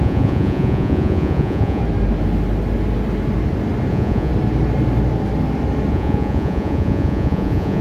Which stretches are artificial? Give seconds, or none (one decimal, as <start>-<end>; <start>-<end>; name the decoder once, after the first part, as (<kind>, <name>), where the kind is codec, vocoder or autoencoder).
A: 0.0-1.8 (vocoder, Vocos); 3.9-4.3; 5.9-7.8